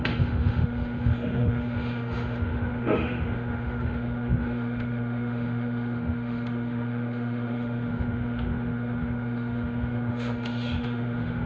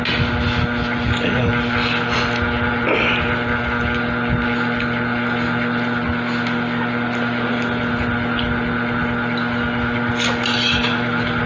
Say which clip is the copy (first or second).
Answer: first